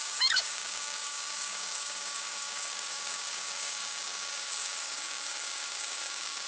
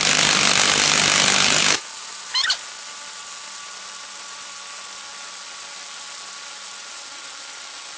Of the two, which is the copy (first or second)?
first